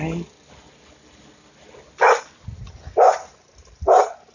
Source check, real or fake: real